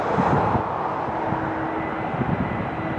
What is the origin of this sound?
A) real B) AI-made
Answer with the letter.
A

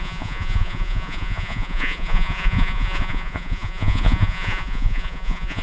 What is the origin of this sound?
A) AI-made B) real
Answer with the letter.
A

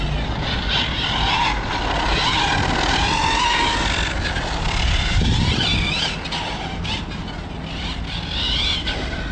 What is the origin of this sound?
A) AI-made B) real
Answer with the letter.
B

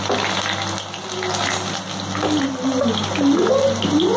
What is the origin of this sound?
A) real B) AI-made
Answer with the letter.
A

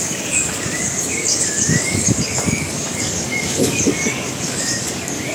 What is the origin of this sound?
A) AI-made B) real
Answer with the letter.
A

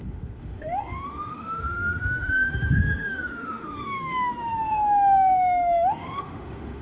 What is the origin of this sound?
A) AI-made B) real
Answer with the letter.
A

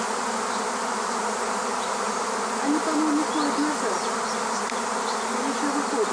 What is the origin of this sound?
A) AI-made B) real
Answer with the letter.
B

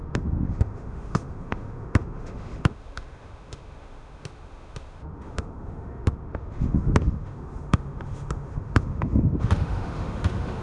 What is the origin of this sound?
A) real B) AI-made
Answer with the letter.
B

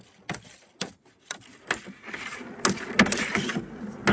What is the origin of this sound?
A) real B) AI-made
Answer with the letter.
A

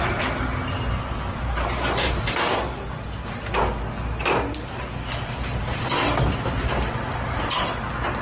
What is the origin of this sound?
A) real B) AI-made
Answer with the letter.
A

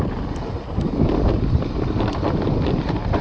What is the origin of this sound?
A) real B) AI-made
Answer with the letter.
A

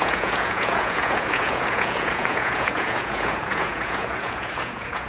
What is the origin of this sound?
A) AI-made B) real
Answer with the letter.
A